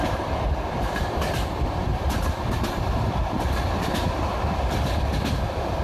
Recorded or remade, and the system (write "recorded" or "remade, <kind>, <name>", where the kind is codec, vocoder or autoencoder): remade, vocoder, BigVGAN v2